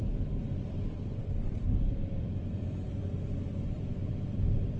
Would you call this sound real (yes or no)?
no